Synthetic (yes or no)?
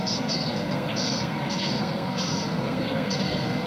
yes